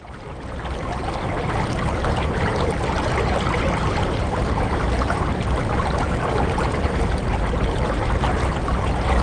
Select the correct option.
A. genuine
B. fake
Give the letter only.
A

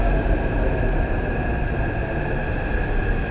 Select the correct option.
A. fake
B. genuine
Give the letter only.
B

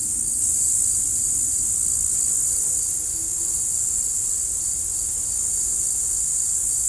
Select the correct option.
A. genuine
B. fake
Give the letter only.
A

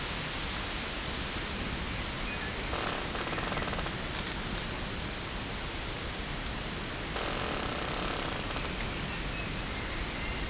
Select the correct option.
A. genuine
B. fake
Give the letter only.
A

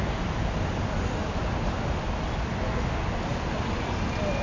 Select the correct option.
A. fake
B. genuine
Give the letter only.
B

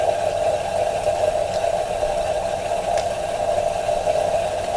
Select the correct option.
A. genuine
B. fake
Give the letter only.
A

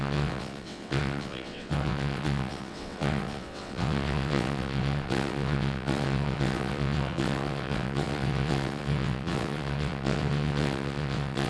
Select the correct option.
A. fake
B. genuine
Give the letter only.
A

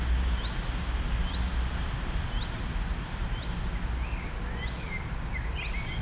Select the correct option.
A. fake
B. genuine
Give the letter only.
B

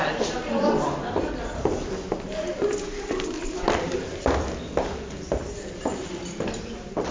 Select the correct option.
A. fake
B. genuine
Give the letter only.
B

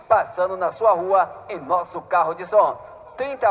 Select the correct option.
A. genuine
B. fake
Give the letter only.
A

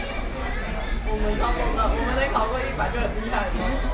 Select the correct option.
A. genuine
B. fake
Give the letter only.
A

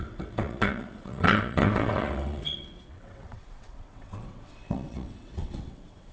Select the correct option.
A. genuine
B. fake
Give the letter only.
B